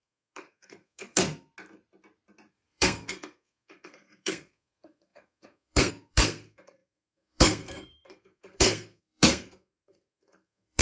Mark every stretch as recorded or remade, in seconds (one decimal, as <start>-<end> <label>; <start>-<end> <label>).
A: 0.0-1.2 remade; 1.2-2.5 recorded; 2.5-10.8 remade